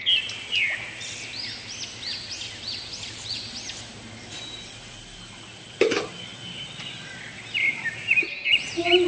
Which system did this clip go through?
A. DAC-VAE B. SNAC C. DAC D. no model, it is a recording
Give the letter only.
D